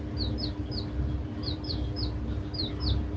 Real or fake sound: fake